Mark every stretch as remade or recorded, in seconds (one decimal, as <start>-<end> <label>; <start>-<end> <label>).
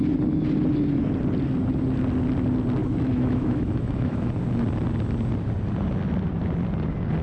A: 0.0-2.8 recorded; 2.8-4.3 remade; 4.3-7.2 recorded